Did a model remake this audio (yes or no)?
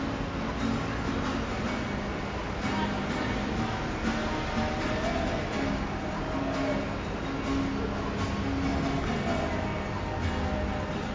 no